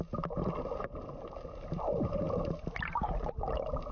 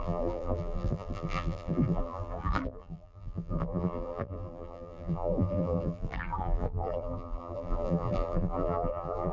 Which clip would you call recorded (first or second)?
first